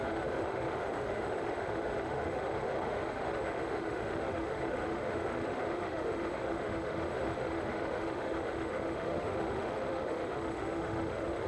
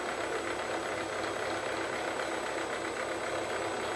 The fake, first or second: first